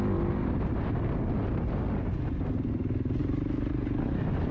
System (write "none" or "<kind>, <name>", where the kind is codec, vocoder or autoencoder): none